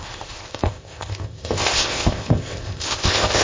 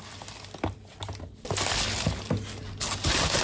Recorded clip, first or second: second